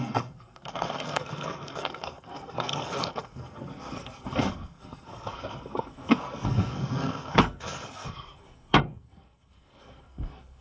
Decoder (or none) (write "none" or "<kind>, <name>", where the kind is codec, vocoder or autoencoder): codec, SNAC